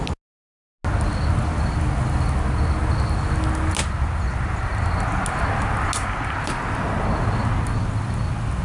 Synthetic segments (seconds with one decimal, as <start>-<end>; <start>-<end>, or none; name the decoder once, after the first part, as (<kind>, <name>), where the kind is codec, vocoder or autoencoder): none